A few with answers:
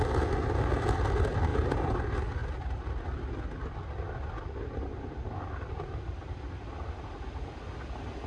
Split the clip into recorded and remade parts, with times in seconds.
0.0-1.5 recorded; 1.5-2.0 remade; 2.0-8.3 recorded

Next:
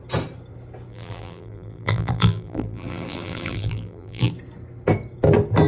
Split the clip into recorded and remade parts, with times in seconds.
0.0-0.9 recorded; 0.9-4.3 remade; 4.3-5.7 recorded